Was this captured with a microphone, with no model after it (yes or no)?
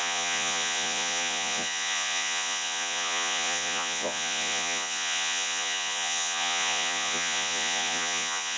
no